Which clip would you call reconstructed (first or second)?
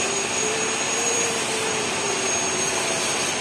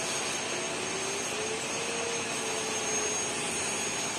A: first